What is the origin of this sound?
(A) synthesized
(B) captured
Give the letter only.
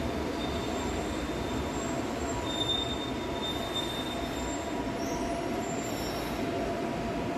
B